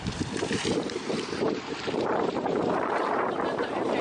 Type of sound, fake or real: fake